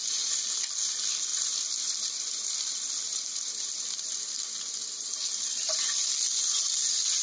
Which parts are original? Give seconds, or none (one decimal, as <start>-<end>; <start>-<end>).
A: 0.0-1.3; 4.2-5.3; 5.8-7.2